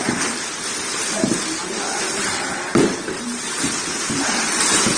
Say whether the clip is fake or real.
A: fake